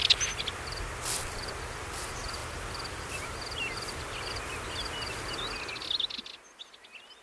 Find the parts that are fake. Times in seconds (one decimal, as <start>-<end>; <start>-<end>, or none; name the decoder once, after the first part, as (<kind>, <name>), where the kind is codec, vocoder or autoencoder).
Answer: none